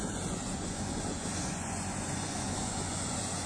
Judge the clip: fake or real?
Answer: fake